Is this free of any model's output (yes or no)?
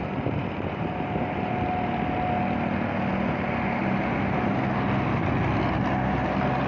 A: yes